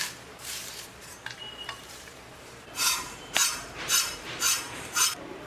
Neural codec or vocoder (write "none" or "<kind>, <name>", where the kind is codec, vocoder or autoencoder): vocoder, BigVGAN v2